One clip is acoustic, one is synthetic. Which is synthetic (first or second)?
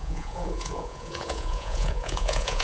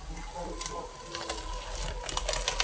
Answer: first